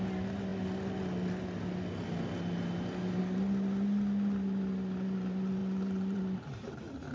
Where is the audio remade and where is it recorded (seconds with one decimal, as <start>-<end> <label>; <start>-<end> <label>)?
0.0-5.6 recorded; 5.6-6.2 remade; 6.2-7.1 recorded